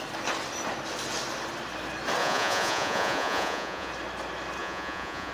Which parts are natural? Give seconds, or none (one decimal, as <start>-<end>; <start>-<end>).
0.0-2.2; 3.9-4.6